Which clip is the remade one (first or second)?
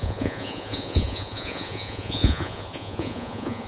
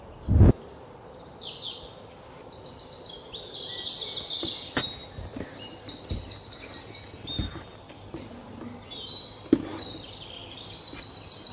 first